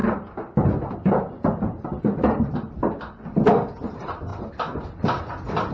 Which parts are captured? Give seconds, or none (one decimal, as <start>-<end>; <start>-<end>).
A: 0.0-5.7